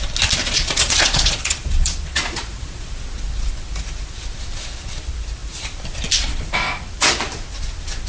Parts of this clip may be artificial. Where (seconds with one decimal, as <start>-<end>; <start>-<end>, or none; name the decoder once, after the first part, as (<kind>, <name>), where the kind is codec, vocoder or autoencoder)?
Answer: 0.4-2.9 (vocoder, Vocos)